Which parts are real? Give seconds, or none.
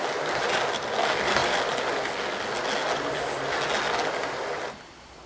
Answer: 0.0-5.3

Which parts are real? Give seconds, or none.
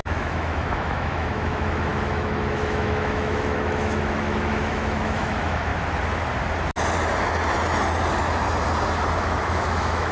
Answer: 5.7-9.2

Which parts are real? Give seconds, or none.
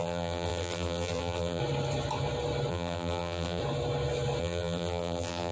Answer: 1.6-2.7; 3.6-4.4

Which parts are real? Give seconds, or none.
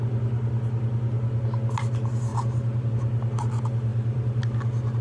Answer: 0.0-2.3; 2.9-3.9; 4.4-5.0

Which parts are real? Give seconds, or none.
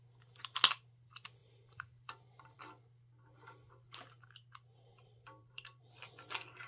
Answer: 0.0-1.4; 2.6-4.9; 5.8-6.7